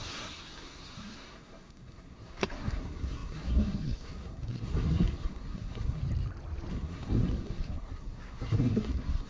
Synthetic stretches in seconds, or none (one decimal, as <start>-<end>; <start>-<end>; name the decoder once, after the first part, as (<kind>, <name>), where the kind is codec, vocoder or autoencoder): 0.0-6.0 (codec, SNAC); 6.7-9.3